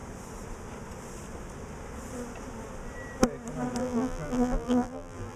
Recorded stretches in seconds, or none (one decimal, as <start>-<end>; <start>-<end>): 0.0-3.8

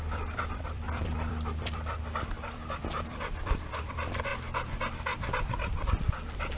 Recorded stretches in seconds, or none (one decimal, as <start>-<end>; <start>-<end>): 4.3-6.1

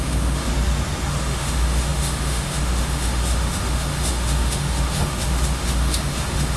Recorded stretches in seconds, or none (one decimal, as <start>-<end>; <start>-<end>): 0.5-1.1

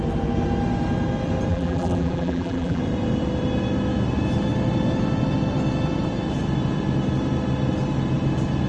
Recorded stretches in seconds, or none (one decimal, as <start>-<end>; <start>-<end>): 0.0-1.5; 2.8-8.7

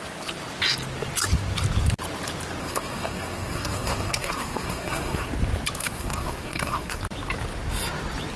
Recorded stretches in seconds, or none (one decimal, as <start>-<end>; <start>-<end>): 0.0-2.6; 5.3-5.8; 7.0-8.4

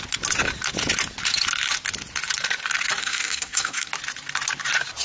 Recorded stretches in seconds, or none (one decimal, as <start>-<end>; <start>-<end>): 0.0-3.0; 3.9-5.0